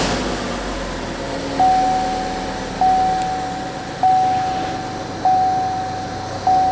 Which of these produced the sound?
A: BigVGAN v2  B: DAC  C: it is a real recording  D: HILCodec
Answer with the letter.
C